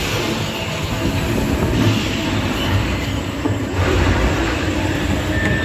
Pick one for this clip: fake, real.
real